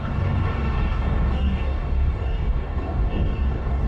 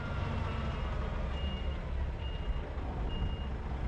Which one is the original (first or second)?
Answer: second